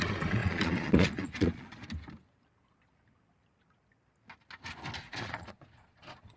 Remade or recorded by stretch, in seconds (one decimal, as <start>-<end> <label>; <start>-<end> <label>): 0.0-1.8 remade; 1.8-5.0 recorded; 5.0-6.4 remade